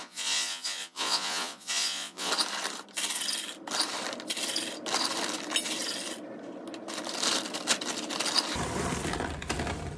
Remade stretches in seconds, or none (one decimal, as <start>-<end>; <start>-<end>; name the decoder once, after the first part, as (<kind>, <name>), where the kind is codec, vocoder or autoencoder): 0.0-2.3 (vocoder, Vocos)